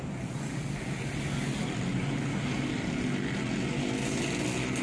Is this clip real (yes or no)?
yes